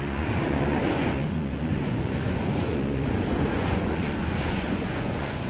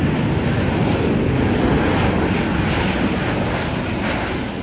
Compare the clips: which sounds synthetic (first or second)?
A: first